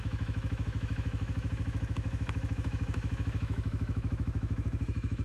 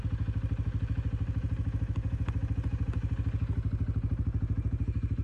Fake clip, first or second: first